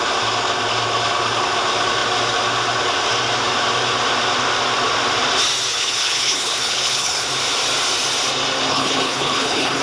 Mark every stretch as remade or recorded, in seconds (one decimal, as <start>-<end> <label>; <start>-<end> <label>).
0.0-5.7 recorded; 5.7-7.3 remade; 7.3-8.7 recorded; 8.7-9.8 remade